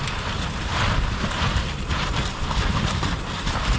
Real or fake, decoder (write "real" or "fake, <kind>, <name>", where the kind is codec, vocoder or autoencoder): fake, vocoder, BigVGAN v2